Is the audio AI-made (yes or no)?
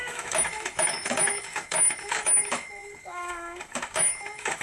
yes